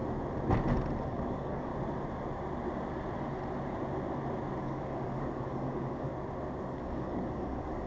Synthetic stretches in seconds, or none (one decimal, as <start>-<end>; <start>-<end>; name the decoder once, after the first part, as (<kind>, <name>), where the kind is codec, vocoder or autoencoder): 1.1-1.7 (codec, DAC); 4.6-6.1; 6.6-7.9